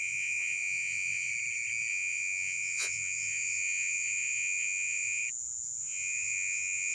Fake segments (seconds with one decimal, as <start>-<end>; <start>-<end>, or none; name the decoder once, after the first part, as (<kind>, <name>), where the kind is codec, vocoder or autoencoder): 0.0-1.3 (vocoder, Vocos); 1.9-5.2; 5.8-6.9